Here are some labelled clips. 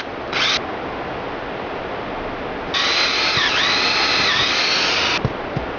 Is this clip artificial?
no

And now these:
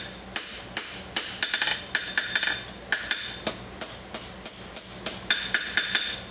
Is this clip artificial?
no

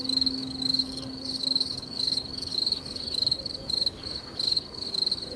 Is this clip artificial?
yes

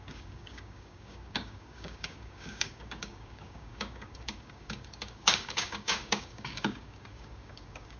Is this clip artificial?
yes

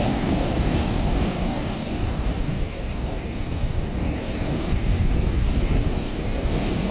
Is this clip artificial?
yes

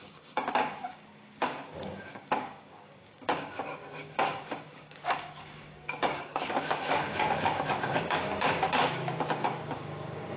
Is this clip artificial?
yes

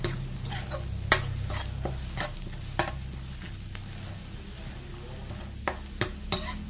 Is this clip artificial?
no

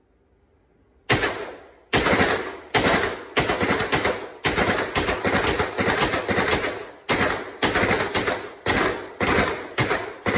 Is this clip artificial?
no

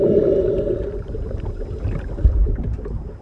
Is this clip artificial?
no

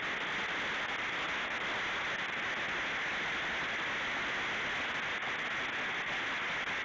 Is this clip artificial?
no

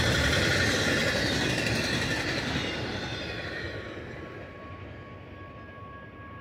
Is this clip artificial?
no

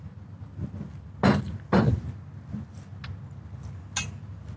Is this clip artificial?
no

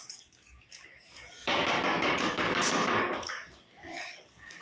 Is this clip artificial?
yes